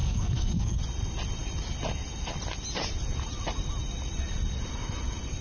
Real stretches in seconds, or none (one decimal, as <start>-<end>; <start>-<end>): 0.8-5.4